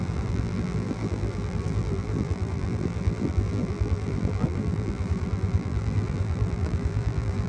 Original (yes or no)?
no